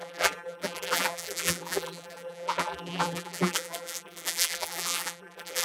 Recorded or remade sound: remade